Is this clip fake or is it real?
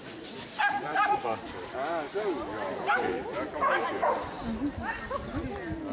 real